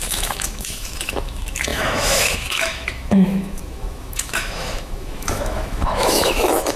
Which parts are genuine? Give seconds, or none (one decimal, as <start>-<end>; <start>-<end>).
none